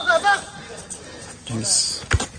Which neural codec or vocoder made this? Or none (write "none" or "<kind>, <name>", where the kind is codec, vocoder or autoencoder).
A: none